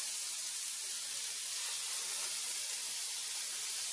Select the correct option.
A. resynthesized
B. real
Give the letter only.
B